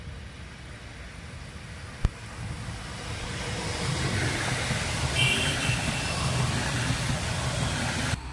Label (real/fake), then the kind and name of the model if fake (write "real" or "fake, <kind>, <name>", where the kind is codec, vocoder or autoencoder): real